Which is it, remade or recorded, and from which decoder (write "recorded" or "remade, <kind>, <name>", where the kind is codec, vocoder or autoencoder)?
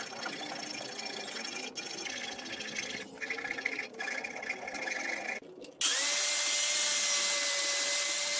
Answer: recorded